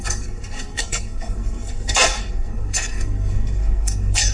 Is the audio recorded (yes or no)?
no